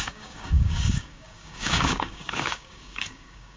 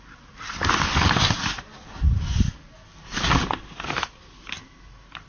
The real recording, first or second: second